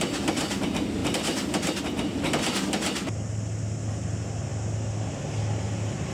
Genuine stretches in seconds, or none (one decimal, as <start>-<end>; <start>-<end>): 0.0-1.0; 1.8-6.1